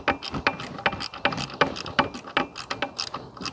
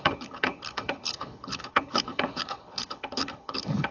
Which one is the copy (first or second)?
second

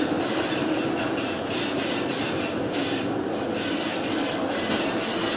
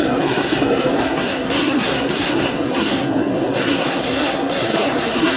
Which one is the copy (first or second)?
second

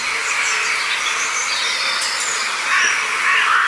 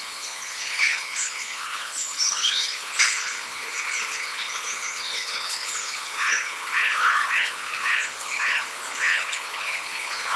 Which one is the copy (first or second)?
second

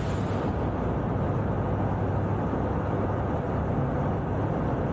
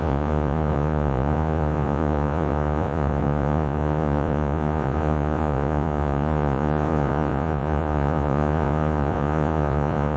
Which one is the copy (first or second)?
second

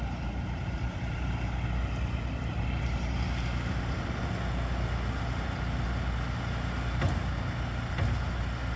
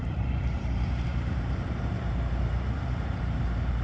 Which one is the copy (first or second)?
second